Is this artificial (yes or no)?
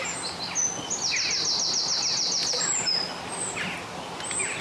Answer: no